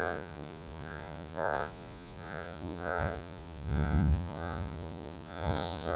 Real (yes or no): no